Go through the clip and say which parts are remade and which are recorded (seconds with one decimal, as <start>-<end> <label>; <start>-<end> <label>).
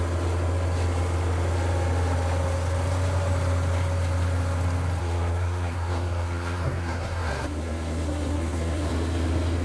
0.0-5.0 recorded; 5.0-8.9 remade; 8.9-9.6 recorded